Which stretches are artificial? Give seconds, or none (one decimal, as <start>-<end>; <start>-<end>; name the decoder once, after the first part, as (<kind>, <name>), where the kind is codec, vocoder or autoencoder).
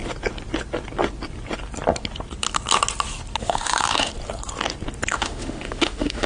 3.4-4.1 (autoencoder, DAC-VAE); 5.1-6.3